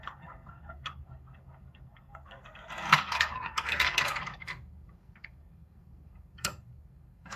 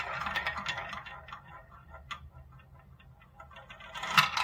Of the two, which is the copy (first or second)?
first